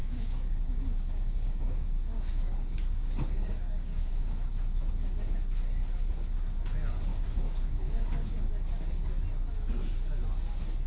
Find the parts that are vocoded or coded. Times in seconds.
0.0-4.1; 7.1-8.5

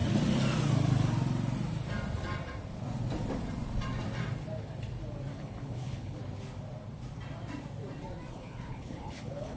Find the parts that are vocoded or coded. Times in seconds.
5.3-6.2; 8.3-9.6

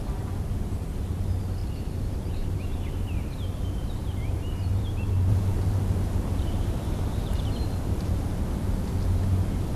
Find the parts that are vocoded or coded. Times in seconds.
1.6-2.6; 4.0-8.4

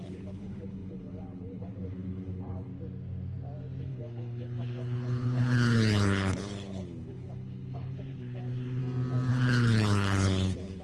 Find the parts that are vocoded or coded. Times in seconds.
0.0-2.7; 3.8-8.8; 9.3-10.8

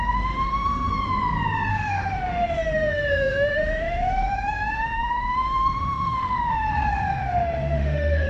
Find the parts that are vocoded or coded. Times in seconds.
0.0-0.9; 1.7-8.3

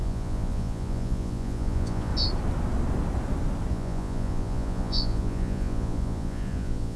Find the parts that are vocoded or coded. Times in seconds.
0.0-2.1; 3.7-7.0

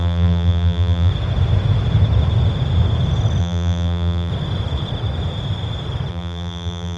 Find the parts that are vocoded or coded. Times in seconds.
0.0-1.1; 3.4-4.3; 6.1-7.0